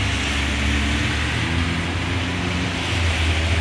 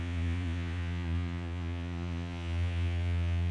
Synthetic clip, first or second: second